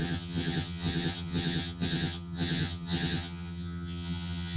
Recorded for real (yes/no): no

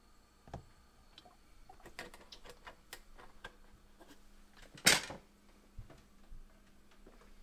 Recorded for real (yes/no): yes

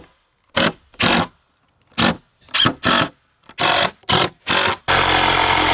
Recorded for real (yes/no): yes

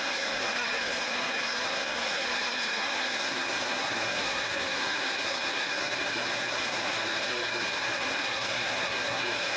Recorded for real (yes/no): no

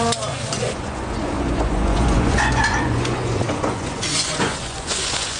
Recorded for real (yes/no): no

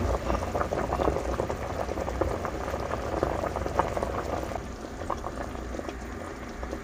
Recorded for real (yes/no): yes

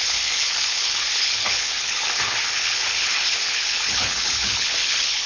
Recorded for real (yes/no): no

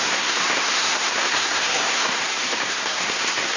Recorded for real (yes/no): no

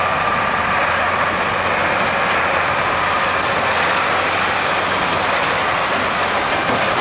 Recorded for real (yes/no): yes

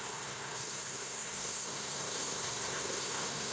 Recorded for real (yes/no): no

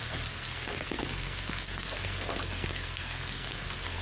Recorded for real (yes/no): no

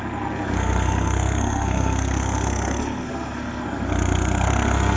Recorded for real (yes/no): no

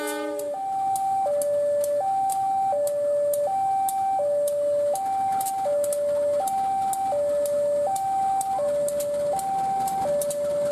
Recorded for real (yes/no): yes